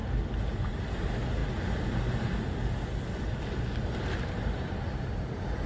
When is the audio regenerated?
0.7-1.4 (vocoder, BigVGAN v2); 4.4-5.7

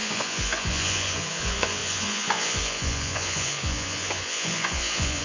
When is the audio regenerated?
0.0-5.2 (vocoder, Vocos)

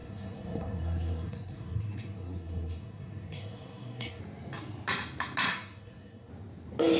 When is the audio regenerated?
0.0-4.2 (codec, SNAC); 5.5-6.3

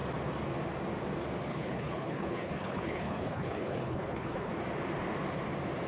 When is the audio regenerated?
1.5-4.5 (codec, HILCodec)

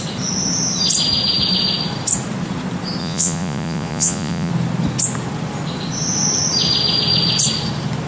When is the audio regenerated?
3.0-4.5 (vocoder, Vocos)

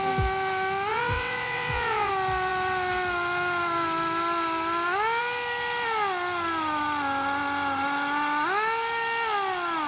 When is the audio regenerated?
0.9-2.1 (vocoder, WaveNeXt)